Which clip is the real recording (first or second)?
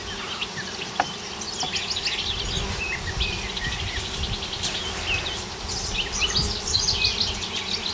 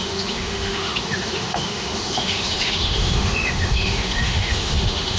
first